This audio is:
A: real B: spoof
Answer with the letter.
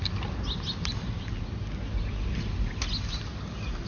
A